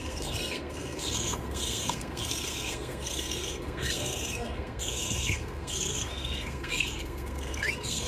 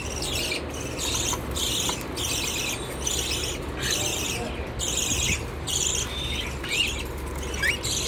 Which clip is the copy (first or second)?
first